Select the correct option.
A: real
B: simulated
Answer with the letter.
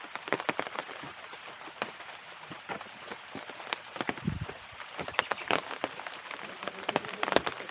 A